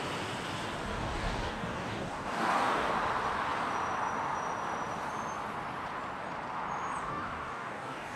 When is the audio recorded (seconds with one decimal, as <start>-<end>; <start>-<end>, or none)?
0.0-0.9; 2.9-7.0